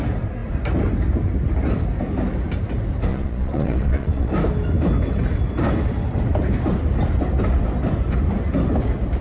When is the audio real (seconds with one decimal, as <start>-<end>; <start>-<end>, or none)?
0.0-3.1; 4.3-9.2

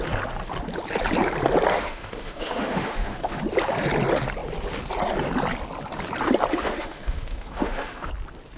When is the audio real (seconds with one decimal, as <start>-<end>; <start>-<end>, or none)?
0.0-1.7; 3.4-6.5; 8.1-8.6

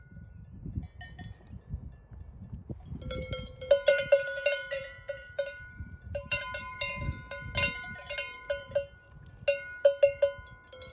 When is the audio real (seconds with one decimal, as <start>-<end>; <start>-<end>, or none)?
0.0-3.9; 6.4-10.9

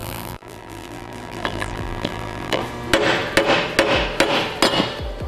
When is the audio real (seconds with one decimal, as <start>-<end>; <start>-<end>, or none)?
2.6-5.3

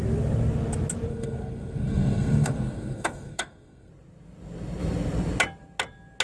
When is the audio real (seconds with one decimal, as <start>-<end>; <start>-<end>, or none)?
0.0-1.1; 3.9-6.2

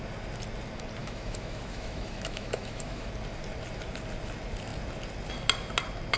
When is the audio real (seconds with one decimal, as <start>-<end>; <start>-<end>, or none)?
0.0-1.0; 3.1-6.2

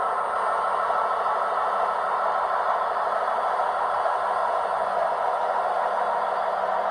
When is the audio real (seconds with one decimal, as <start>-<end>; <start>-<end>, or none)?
0.0-4.4; 5.7-6.9